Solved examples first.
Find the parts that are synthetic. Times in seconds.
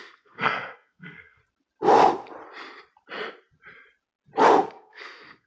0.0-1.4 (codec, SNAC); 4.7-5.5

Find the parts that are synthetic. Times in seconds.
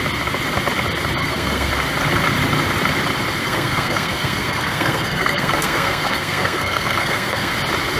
1.2-1.7 (codec, SNAC); 3.4-7.5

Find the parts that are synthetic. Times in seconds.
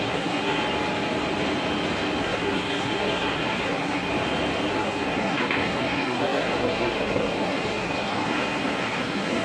0.0-0.6 (codec, SNAC); 2.2-4.1; 4.7-9.4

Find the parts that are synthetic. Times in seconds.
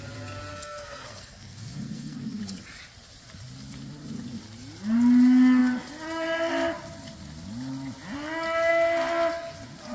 0.5-2.4 (codec, SNAC)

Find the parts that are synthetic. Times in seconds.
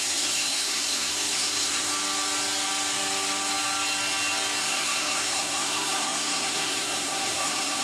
0.0-1.9 (codec, SNAC); 4.6-7.8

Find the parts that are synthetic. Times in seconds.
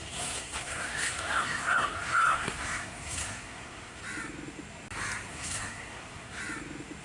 0.0-4.0 (codec, SNAC); 5.3-6.4